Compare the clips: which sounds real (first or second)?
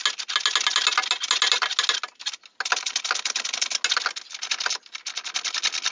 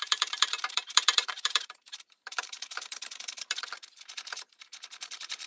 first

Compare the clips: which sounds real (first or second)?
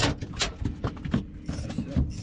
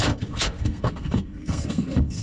first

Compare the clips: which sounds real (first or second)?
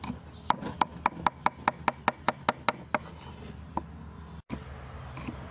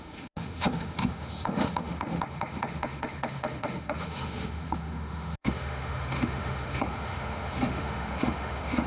first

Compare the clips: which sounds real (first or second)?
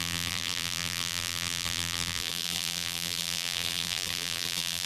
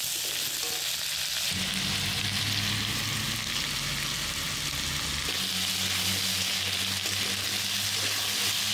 second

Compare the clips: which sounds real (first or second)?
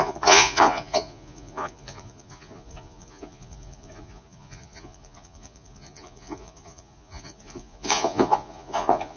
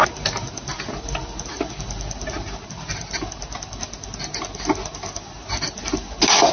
second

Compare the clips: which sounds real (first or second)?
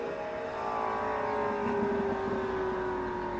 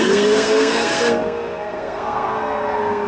first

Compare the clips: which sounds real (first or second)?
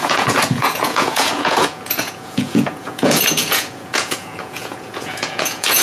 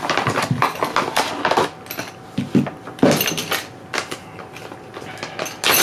second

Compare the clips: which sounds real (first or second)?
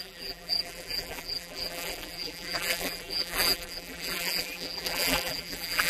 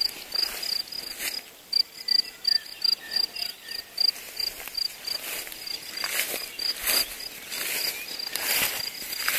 second